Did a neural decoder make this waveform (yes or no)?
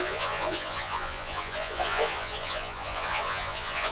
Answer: yes